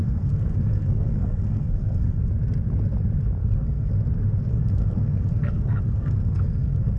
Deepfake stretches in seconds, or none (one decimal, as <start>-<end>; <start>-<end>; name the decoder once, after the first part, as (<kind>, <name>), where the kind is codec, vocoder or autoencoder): 0.0-2.2 (codec, SNAC); 3.4-3.9; 4.5-7.0